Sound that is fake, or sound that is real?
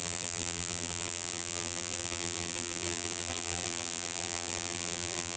fake